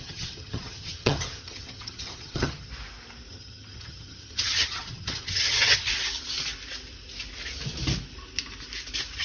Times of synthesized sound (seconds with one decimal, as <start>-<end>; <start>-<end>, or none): 0.0-2.7; 3.3-5.9